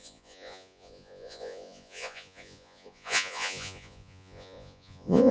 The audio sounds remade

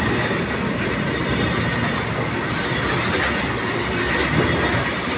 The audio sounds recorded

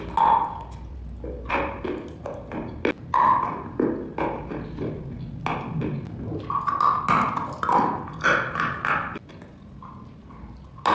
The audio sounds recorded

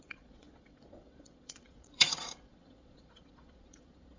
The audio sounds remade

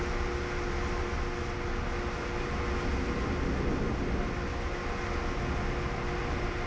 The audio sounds recorded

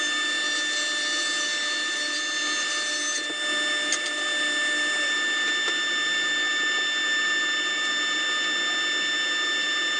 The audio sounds recorded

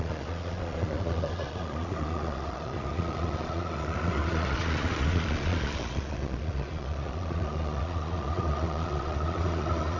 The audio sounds remade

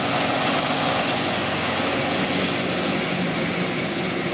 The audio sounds remade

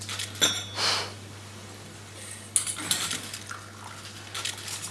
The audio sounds recorded